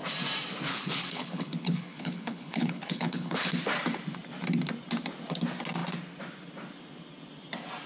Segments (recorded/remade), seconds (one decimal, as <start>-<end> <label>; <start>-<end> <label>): 0.0-0.7 recorded; 0.7-3.6 remade; 3.6-7.9 recorded